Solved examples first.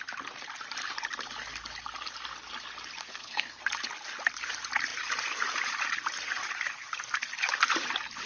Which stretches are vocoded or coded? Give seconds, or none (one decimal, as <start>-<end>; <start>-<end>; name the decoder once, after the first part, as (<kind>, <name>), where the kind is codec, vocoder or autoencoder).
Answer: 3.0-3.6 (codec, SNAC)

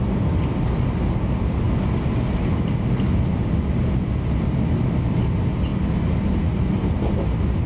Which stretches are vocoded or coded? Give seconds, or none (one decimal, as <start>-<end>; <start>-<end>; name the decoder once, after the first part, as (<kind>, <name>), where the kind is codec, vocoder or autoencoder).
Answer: none

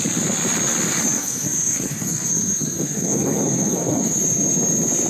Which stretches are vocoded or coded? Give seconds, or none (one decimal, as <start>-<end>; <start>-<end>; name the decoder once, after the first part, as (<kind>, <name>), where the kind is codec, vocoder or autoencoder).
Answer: 1.1-4.2 (codec, SNAC)

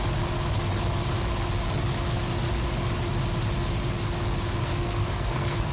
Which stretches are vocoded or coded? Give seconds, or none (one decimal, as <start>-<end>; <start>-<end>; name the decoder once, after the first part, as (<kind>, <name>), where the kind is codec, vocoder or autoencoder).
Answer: 4.6-5.7 (codec, SNAC)

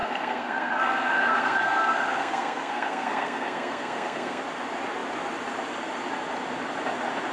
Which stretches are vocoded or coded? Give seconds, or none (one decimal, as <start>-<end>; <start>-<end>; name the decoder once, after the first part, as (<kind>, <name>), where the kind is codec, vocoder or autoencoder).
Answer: 0.0-4.4 (codec, SNAC)